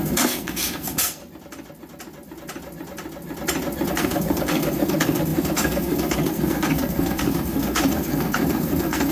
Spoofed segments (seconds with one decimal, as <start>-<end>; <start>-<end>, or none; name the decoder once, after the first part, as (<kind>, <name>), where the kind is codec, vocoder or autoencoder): 0.0-1.2 (codec, SNAC); 3.9-9.1